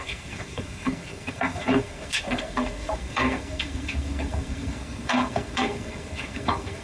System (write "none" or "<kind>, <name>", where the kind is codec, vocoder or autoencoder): codec, SNAC